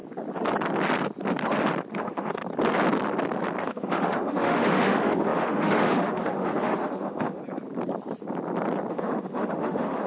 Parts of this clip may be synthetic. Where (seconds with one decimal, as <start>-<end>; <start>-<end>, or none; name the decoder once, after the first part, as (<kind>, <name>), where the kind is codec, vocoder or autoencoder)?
2.0-2.4 (autoencoder, DAC-VAE); 3.6-7.4; 8.9-10.1